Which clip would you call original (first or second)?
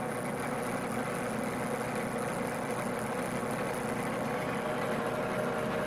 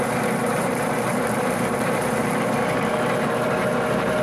first